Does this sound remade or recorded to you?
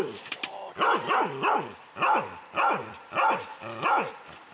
remade